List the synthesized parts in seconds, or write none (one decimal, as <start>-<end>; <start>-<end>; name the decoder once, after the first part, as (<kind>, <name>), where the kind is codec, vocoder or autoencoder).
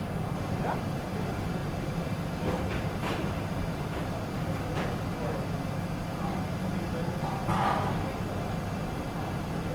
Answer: 1.6-4.5 (vocoder, BigVGAN v2)